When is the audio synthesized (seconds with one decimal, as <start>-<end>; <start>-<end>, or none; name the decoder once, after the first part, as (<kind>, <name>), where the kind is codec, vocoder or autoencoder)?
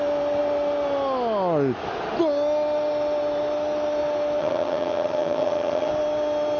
4.4-5.9 (vocoder, HiFi-GAN)